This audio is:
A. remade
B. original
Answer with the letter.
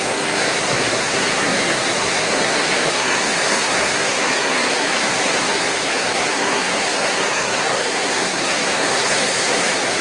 A